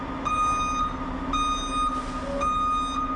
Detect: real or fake real